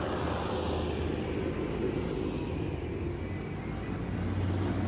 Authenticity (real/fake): real